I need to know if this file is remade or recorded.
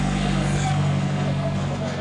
remade